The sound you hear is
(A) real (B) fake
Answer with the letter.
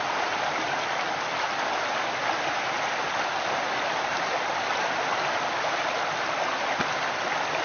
A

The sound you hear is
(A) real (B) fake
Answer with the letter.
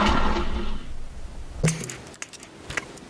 A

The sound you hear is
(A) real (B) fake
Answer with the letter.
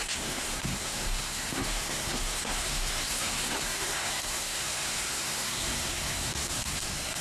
B